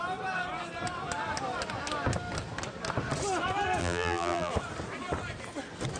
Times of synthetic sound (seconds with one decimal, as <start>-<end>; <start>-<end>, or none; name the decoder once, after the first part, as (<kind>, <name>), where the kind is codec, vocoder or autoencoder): 3.8-4.5 (vocoder, BigVGAN v2)